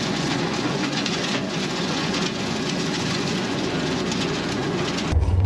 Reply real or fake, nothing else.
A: fake